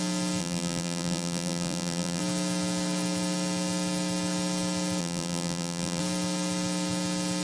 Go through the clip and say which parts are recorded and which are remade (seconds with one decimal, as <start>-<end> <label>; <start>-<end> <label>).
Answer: 0.0-0.4 recorded; 0.4-2.2 remade; 2.2-5.0 recorded; 5.0-6.0 remade; 6.0-7.4 recorded